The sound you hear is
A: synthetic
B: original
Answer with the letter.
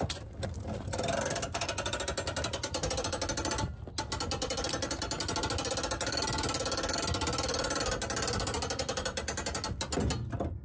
B